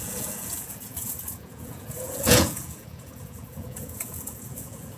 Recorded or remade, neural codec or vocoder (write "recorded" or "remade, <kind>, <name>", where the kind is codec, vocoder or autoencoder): remade, vocoder, Vocos